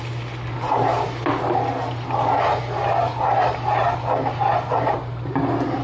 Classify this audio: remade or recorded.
recorded